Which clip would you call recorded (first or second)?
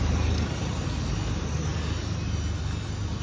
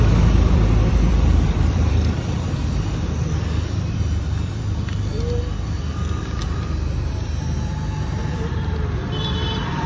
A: first